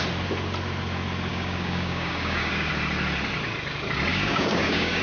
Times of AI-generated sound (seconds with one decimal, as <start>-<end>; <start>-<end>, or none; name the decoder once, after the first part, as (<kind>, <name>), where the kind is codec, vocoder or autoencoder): 1.3-2.7 (codec, DAC); 4.1-5.0